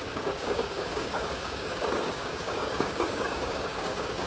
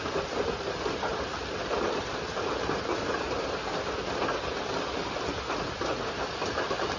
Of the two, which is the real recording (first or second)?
second